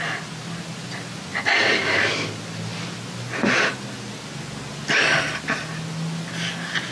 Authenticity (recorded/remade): recorded